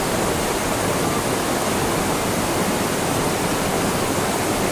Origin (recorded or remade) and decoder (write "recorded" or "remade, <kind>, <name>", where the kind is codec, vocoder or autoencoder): recorded